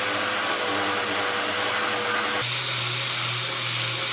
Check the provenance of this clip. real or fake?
real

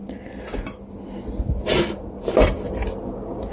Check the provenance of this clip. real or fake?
real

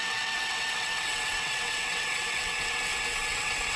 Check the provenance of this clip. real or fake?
fake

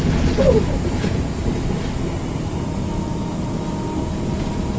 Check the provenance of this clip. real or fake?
real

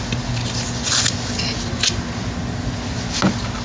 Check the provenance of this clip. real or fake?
real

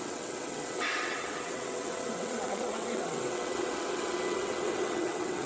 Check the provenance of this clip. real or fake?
fake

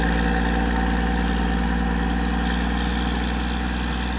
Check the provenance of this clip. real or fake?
real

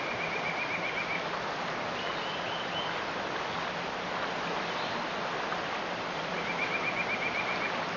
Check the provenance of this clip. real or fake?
real